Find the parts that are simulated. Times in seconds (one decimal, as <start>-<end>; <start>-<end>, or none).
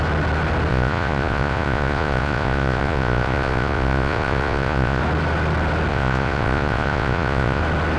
0.7-5.0; 5.9-7.6